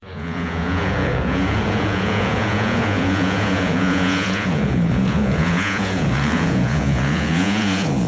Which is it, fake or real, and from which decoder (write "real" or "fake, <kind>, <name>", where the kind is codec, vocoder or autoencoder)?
fake, vocoder, Vocos